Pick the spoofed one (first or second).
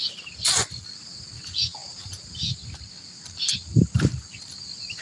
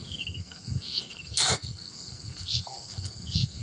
second